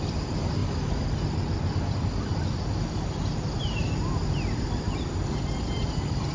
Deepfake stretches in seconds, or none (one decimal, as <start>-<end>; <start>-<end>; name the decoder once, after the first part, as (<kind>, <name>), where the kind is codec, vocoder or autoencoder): none